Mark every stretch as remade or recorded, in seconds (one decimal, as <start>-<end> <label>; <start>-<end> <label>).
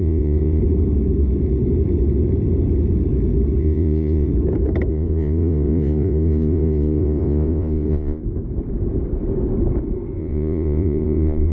0.0-0.6 remade; 0.6-3.6 recorded; 3.6-4.3 remade; 4.3-4.9 recorded; 4.9-8.2 remade; 8.2-10.2 recorded; 10.2-11.5 remade